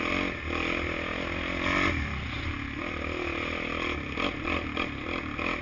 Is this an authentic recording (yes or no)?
yes